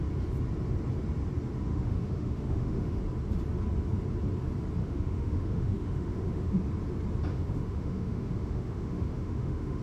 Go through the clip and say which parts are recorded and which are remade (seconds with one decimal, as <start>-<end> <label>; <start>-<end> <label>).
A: 0.0-1.7 recorded; 1.7-3.0 remade; 3.0-4.8 recorded; 4.8-6.5 remade; 6.5-7.3 recorded; 7.3-9.8 remade